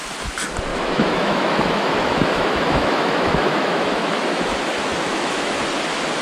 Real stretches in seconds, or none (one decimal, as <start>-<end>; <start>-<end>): 0.0-0.7; 4.4-5.1; 5.6-6.2